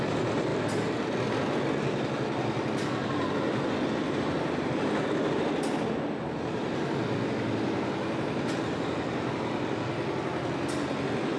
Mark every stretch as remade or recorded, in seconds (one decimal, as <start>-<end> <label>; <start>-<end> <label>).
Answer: 0.0-11.4 recorded